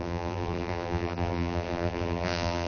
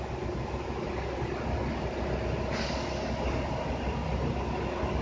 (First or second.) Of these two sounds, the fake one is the first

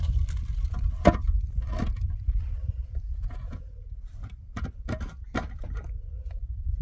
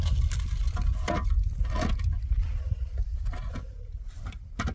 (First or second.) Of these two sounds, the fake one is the first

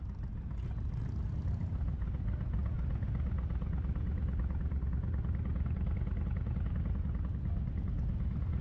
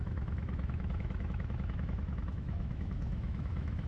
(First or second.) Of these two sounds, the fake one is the second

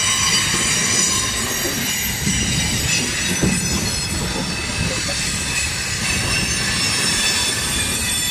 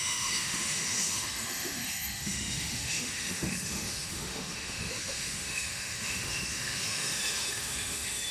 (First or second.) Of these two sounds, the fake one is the second